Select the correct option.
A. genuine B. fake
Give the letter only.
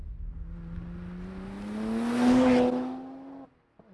A